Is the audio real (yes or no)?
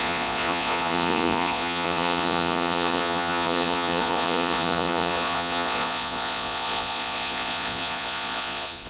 no